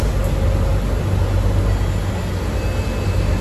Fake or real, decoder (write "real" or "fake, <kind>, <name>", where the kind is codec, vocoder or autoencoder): real